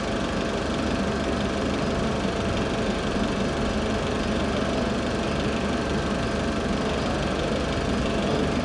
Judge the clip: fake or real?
real